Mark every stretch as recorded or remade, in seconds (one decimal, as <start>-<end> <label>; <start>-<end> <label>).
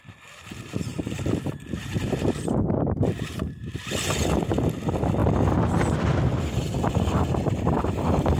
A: 0.0-0.9 recorded; 0.9-3.7 remade; 3.7-8.4 recorded